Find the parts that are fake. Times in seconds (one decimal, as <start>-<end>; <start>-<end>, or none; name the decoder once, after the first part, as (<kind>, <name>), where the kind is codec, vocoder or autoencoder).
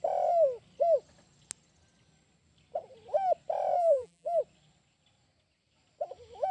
3.8-4.4 (vocoder, BigVGAN v2)